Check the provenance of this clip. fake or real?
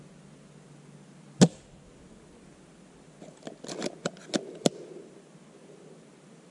real